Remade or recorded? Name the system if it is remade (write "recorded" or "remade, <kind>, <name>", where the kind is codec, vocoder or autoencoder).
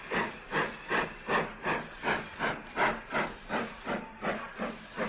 recorded